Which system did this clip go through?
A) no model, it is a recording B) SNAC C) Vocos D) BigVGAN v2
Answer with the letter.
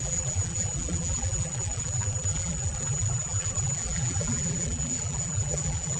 D